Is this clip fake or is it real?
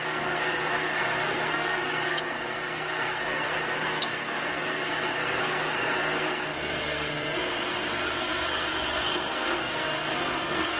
fake